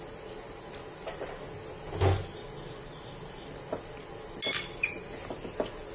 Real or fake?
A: real